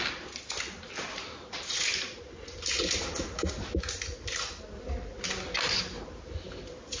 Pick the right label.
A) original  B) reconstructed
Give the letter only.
A